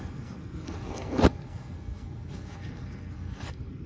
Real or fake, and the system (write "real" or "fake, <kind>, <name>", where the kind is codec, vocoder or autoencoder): fake, codec, SNAC